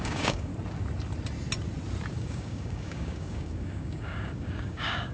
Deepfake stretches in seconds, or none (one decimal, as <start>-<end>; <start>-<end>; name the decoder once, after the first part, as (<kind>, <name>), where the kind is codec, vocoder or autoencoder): 0.0-0.5 (codec, DAC); 2.1-5.1